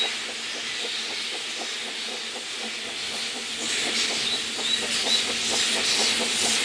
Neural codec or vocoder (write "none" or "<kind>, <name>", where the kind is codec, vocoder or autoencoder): none